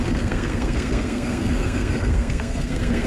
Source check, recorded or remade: remade